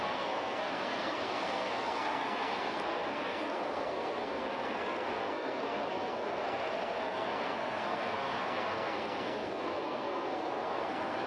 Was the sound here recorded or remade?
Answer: remade